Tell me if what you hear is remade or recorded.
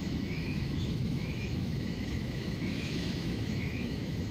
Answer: remade